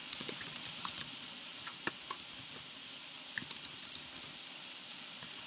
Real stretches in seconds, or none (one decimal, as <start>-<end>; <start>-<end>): 1.6-4.9